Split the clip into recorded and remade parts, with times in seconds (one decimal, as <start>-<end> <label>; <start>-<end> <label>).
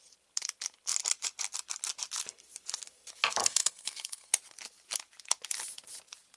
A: 0.0-3.4 recorded; 3.4-4.3 remade; 4.3-6.4 recorded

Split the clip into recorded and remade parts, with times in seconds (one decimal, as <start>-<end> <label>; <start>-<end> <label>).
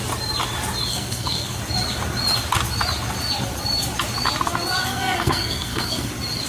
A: 0.0-0.9 recorded; 0.9-1.6 remade; 1.6-4.8 recorded; 4.8-6.1 remade; 6.1-6.5 recorded